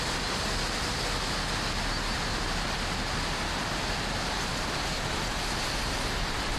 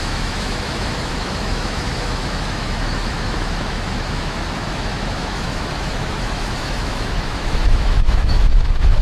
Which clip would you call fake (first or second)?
second